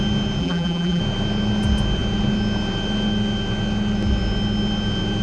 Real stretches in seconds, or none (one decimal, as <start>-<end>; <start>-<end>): 0.0-0.4; 1.0-5.2

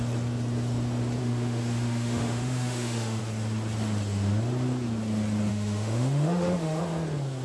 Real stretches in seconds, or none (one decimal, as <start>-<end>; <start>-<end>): 0.0-1.2; 3.2-5.5; 6.8-7.4

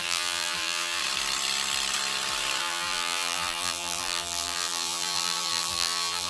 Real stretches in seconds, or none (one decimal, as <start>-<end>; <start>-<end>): 1.0-2.6